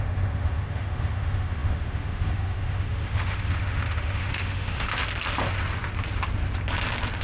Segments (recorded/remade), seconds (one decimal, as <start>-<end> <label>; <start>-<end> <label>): 0.0-4.9 remade; 4.9-7.2 recorded